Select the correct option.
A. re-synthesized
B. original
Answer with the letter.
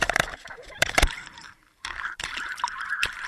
A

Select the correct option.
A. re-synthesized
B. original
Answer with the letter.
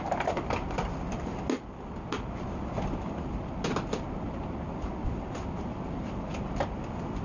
B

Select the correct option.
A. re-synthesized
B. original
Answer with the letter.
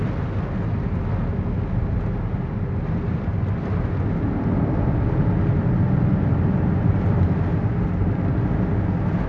B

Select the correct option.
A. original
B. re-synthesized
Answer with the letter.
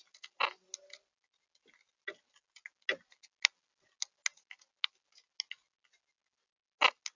A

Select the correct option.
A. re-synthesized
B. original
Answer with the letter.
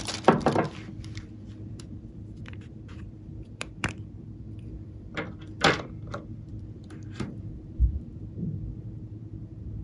A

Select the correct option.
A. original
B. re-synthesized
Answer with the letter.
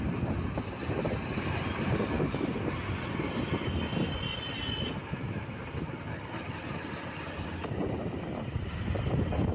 A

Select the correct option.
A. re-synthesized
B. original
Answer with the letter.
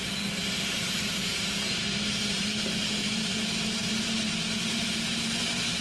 A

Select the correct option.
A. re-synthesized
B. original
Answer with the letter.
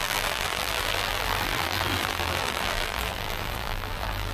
A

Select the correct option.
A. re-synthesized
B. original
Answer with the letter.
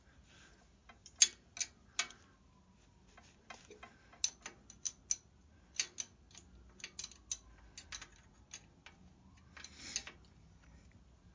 B